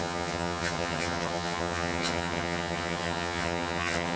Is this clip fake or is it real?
fake